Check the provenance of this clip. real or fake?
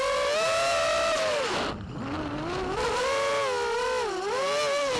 real